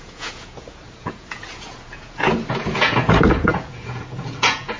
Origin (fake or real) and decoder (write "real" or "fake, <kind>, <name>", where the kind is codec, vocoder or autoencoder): fake, vocoder, Vocos